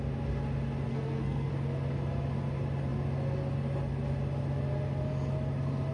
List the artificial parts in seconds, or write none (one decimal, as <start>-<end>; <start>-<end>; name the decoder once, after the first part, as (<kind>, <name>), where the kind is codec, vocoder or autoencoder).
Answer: 0.9-1.5 (codec, SNAC)